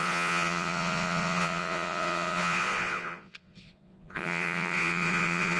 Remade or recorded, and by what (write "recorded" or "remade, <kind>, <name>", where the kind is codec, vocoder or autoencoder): remade, vocoder, Vocos